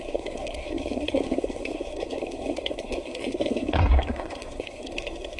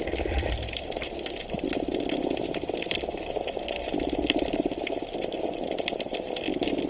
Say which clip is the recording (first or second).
second